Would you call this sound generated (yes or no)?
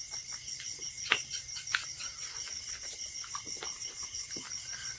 no